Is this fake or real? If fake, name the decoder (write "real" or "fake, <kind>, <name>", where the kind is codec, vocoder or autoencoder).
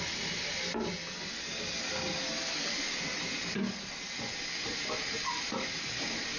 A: real